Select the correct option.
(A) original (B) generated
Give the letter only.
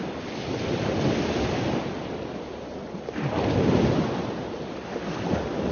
A